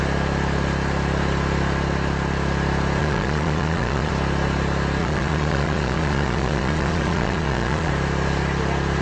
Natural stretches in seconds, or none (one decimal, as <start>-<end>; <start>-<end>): 0.0-3.0; 4.1-5.0; 7.9-9.0